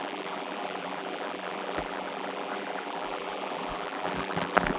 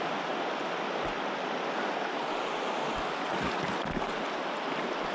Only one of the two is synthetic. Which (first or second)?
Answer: first